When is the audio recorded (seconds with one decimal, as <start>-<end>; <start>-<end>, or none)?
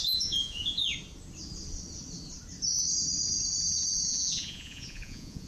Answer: 0.8-4.1